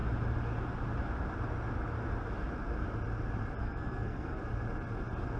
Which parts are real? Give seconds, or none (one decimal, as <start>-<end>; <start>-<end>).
0.0-3.6; 4.4-5.4